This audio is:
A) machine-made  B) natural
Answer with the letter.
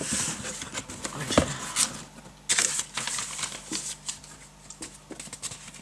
B